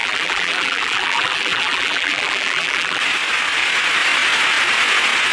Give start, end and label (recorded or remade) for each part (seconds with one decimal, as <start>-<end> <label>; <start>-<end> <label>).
0.0-3.0 remade; 3.0-5.3 recorded

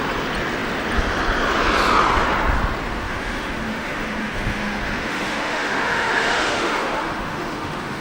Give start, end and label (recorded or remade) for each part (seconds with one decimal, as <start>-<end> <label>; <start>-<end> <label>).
0.0-3.0 recorded; 3.0-8.0 remade

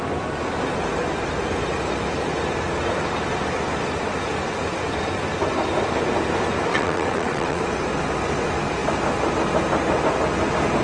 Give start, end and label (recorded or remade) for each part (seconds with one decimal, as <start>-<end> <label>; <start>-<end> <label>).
0.0-6.7 recorded; 6.7-7.6 remade; 7.6-10.8 recorded

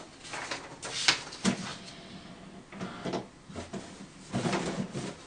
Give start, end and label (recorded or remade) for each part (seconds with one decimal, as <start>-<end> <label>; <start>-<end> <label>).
0.0-5.3 recorded

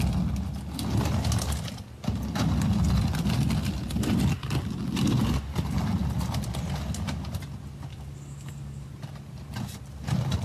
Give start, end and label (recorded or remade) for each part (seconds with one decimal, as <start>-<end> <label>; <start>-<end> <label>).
0.0-7.9 recorded; 7.9-8.9 remade; 8.9-10.4 recorded